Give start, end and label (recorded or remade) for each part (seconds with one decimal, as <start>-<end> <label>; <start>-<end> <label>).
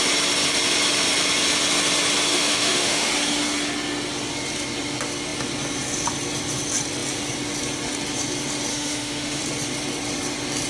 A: 0.0-2.3 recorded; 2.3-3.1 remade; 3.1-8.7 recorded; 8.7-9.4 remade; 9.4-10.7 recorded